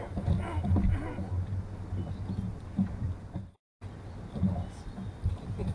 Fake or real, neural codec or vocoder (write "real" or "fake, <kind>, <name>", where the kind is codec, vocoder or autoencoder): real